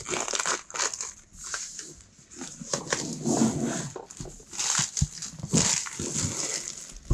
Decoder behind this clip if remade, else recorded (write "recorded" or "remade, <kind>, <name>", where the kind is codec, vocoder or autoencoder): recorded